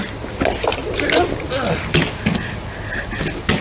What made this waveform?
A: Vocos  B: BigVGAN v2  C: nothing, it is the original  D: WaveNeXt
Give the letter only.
C